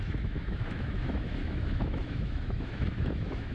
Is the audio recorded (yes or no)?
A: no